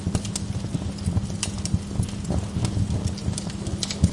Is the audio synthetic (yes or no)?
no